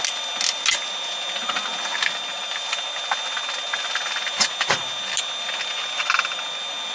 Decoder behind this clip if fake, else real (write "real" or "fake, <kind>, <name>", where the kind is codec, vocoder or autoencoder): real